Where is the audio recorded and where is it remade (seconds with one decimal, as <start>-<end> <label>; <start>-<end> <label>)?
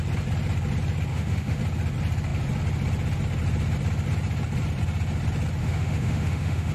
0.0-1.1 recorded; 1.1-1.6 remade; 1.6-5.6 recorded; 5.6-6.7 remade